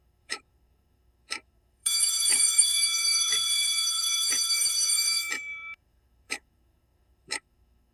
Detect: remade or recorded remade